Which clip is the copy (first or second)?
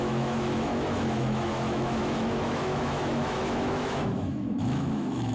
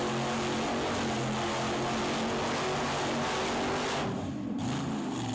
first